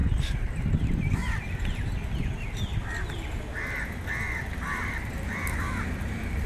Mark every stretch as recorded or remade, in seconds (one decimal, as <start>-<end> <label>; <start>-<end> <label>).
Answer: 0.0-1.9 remade; 1.9-4.9 recorded; 4.9-6.5 remade